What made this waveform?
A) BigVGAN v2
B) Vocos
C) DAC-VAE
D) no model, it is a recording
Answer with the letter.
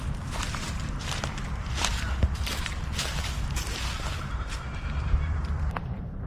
A